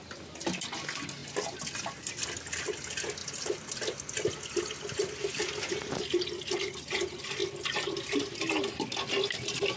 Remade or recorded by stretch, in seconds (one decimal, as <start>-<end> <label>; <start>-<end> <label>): 0.0-3.2 recorded; 3.2-5.6 remade; 5.6-7.4 recorded; 7.4-8.0 remade; 8.0-9.8 recorded